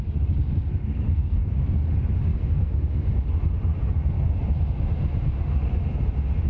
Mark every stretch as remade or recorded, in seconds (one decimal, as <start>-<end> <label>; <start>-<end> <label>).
0.0-0.8 recorded; 0.8-1.5 remade; 1.5-2.3 recorded; 2.3-3.1 remade; 3.1-6.5 recorded